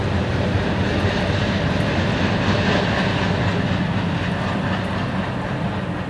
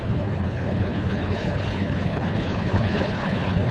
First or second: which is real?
first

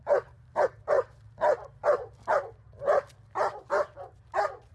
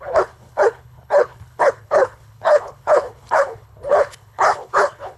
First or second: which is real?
first